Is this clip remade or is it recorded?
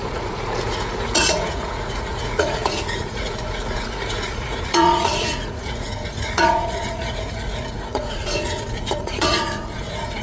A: remade